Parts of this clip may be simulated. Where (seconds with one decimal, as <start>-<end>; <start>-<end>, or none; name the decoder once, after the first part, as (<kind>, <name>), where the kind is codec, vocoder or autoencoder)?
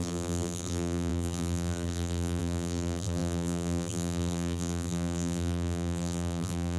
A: 0.0-6.8 (vocoder, BigVGAN v2)